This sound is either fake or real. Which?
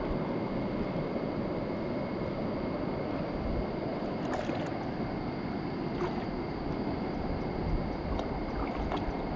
real